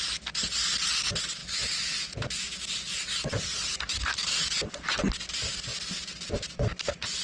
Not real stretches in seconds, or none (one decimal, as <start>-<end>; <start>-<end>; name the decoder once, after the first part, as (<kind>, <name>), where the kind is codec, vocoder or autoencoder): none